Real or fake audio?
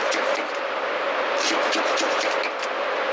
real